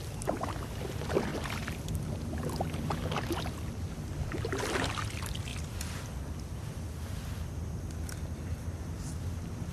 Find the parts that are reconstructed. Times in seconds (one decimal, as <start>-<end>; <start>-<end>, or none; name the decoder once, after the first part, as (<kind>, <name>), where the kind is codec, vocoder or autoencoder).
1.3-3.0 (vocoder, BigVGAN v2)